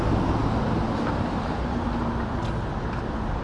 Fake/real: real